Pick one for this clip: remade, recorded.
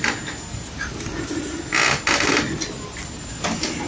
recorded